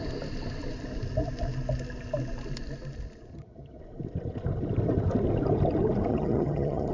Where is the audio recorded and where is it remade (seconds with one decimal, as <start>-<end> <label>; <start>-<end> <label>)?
0.0-3.3 recorded; 3.3-3.8 remade; 3.8-6.1 recorded; 6.1-6.9 remade